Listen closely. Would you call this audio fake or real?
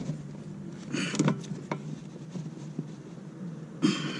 real